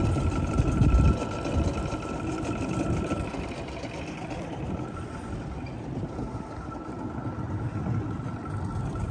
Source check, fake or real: real